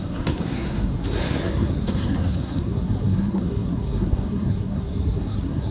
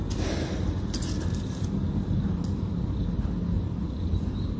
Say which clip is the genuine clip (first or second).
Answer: second